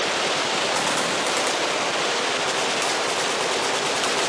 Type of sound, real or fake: real